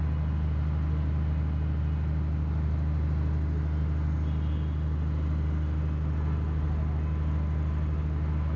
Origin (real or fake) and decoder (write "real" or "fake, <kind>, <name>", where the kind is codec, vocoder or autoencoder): real